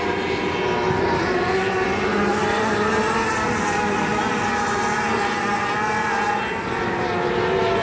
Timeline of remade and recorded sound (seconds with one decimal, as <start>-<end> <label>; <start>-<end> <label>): 0.0-7.8 recorded